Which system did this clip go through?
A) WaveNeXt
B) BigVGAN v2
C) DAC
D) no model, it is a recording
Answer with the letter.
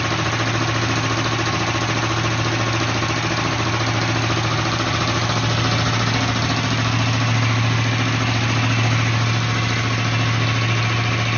D